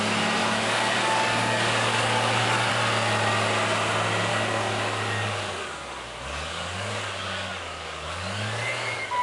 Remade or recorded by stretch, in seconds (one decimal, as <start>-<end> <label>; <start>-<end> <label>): 0.0-0.4 recorded; 0.4-2.7 remade; 2.7-4.3 recorded; 4.3-9.2 remade